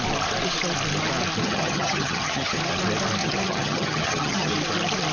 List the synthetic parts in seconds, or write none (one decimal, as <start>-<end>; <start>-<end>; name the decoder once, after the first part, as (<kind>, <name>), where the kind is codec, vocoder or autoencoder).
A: 1.4-2.6 (vocoder, HiFi-GAN); 3.2-4.5